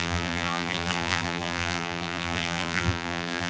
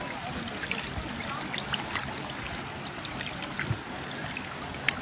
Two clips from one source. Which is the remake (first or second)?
first